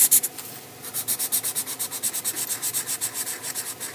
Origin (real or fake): real